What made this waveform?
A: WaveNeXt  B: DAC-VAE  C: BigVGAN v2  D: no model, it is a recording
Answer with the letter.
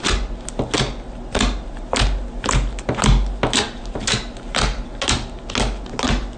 D